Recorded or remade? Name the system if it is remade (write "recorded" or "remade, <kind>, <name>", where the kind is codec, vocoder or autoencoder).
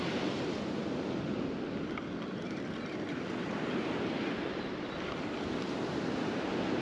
recorded